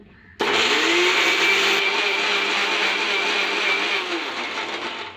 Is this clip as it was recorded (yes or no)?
yes